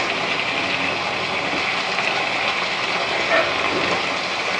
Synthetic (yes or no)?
no